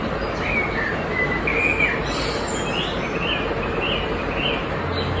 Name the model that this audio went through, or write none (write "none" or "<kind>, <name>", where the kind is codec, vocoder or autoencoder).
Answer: none